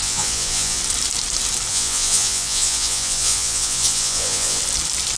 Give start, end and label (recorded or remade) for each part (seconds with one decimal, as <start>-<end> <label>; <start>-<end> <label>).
0.0-0.8 remade; 0.8-1.7 recorded; 1.7-4.6 remade; 4.6-5.2 recorded